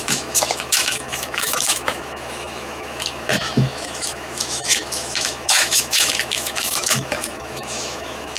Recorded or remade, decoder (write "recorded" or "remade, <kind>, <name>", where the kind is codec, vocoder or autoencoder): remade, autoencoder, DAC-VAE